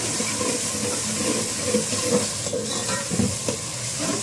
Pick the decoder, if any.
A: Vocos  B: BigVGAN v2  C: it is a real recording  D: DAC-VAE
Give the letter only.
C